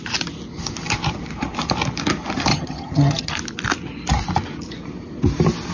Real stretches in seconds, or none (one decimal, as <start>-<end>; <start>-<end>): 0.0-2.5; 3.3-5.7